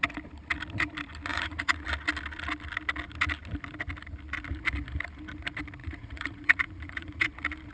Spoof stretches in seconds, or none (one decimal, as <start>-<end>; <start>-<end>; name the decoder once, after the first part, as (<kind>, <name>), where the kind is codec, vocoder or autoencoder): 1.3-1.8 (vocoder, Vocos); 5.8-7.3